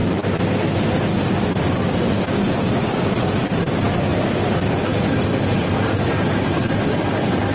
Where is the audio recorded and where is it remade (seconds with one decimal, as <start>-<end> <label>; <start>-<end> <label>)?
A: 0.0-7.5 recorded